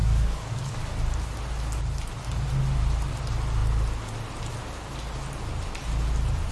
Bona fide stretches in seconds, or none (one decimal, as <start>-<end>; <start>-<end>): 0.8-6.5